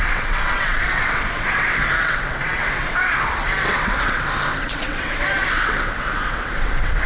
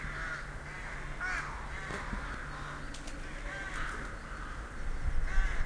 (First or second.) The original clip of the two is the second